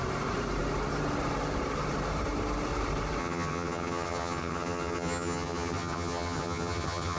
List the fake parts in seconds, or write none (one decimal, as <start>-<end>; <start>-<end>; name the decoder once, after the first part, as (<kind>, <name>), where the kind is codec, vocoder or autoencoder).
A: 3.2-7.2 (vocoder, HiFi-GAN)